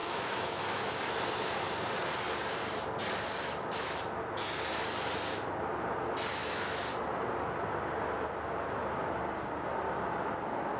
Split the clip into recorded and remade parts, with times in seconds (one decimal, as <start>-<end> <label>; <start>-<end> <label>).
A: 0.0-0.9 remade; 0.9-6.3 recorded; 6.3-6.8 remade; 6.8-10.8 recorded